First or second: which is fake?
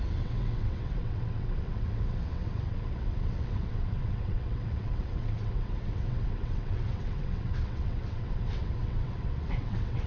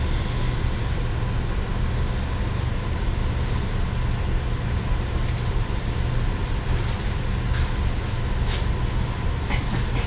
first